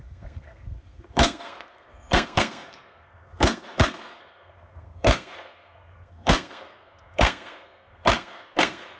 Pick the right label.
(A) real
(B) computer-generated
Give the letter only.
B